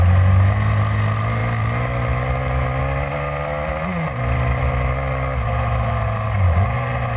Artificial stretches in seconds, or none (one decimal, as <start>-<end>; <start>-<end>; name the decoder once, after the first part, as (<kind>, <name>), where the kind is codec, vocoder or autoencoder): none